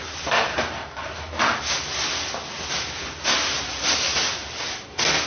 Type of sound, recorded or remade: recorded